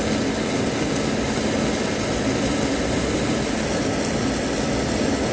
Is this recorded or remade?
recorded